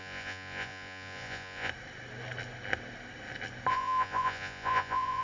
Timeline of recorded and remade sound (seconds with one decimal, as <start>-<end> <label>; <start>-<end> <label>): 0.0-1.7 remade; 1.7-3.7 recorded; 3.7-5.2 remade

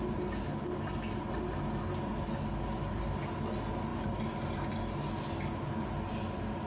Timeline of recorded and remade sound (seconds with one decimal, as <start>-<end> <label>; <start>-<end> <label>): 0.0-6.7 recorded

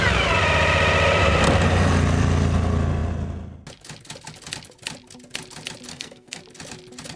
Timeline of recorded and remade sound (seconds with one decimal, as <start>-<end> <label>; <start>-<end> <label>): 0.0-5.9 recorded; 5.9-6.4 remade; 6.4-7.2 recorded

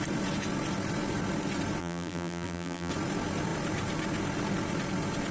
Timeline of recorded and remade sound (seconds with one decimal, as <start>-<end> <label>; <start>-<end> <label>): 0.0-1.8 recorded; 1.8-2.9 remade; 2.9-5.3 recorded

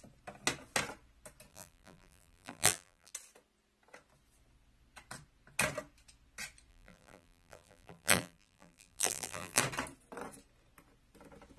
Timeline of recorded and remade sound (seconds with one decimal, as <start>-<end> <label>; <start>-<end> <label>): 0.0-1.5 recorded; 1.5-3.1 remade; 3.1-6.7 recorded; 6.7-9.6 remade; 9.6-11.6 recorded